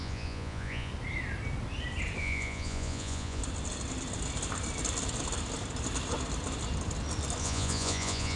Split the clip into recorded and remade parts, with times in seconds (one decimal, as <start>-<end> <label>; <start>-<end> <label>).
0.0-0.9 remade; 0.9-2.2 recorded; 2.2-3.4 remade; 3.4-7.4 recorded; 7.4-8.4 remade